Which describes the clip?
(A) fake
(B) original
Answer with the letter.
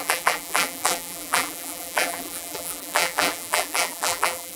A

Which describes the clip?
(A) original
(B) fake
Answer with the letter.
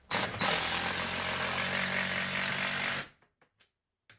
A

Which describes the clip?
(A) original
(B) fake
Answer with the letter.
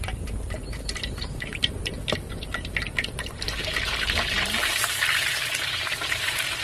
B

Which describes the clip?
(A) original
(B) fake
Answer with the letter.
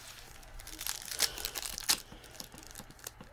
A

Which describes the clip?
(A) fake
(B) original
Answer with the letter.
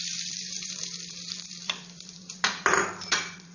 A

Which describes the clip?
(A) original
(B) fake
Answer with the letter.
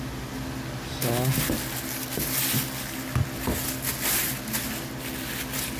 A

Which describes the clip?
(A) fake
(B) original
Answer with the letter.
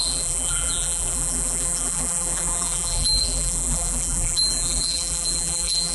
A